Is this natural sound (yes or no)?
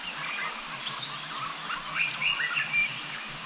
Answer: yes